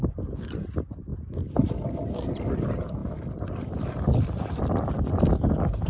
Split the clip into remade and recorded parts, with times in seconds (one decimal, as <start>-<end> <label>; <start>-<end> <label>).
0.0-5.9 recorded